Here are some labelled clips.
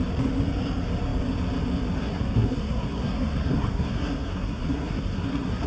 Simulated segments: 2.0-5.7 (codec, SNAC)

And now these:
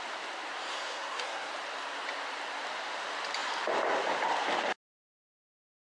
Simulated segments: 0.7-1.5 (codec, SNAC)

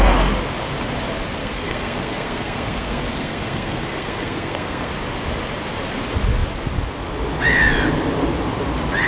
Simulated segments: 1.4-4.9 (codec, SNAC)